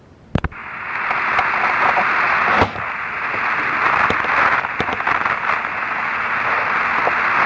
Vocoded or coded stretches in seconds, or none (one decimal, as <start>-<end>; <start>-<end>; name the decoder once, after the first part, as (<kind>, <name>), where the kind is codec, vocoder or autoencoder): none